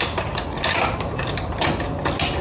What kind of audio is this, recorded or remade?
recorded